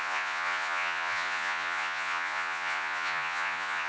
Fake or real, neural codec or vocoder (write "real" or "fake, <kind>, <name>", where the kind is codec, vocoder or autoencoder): fake, vocoder, Vocos